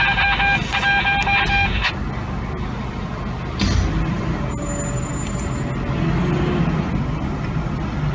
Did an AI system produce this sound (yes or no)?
no